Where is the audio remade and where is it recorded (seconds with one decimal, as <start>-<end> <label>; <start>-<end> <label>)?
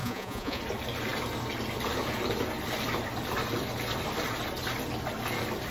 0.0-0.6 remade; 0.6-5.7 recorded